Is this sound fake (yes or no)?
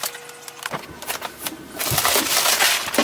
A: no